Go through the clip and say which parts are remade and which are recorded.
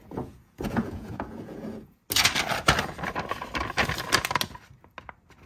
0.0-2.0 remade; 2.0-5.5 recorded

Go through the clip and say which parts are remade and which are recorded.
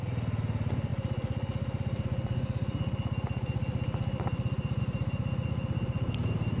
0.0-6.6 recorded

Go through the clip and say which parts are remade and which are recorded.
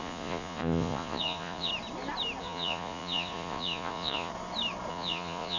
0.0-1.7 remade; 1.7-2.4 recorded; 2.4-4.3 remade; 4.3-4.9 recorded; 4.9-5.6 remade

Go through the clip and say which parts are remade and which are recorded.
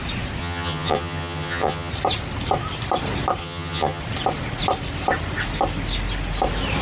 0.0-0.4 recorded; 0.4-1.9 remade; 1.9-3.4 recorded; 3.4-4.0 remade; 4.0-6.8 recorded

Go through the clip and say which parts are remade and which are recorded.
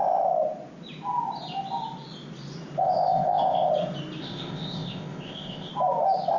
0.0-2.8 recorded; 2.8-3.7 remade; 3.7-4.2 recorded; 4.2-5.7 remade; 5.7-6.4 recorded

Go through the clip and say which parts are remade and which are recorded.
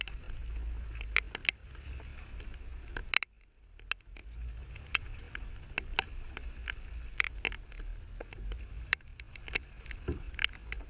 0.0-10.9 recorded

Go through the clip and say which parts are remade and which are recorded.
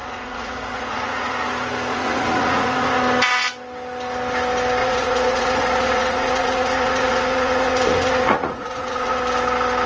0.0-1.3 remade; 1.3-1.9 recorded; 1.9-3.0 remade; 3.0-4.8 recorded; 4.8-9.2 remade; 9.2-9.9 recorded